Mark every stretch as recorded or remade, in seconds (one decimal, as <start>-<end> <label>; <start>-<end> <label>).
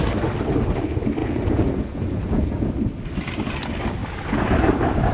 0.0-1.2 recorded; 1.2-2.7 remade; 2.7-5.1 recorded